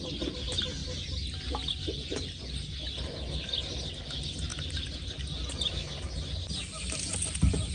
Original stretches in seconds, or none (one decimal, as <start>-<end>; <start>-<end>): 0.0-7.7